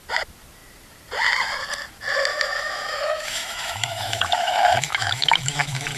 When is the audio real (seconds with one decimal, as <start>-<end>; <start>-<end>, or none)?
0.0-2.3

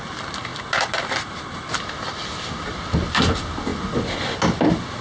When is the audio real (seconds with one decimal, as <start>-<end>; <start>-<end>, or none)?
0.0-5.0

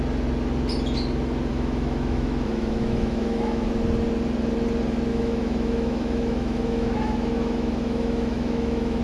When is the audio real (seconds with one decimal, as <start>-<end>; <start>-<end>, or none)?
0.0-1.5; 3.7-5.1

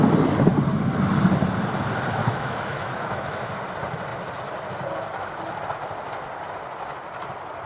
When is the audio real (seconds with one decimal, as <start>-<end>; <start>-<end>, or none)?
0.0-2.2; 3.5-7.7

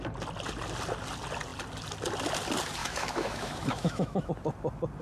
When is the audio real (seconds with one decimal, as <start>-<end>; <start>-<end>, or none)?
0.0-2.8; 4.3-5.0

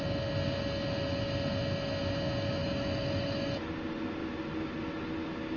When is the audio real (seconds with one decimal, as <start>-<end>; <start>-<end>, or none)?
0.0-2.6; 3.7-5.6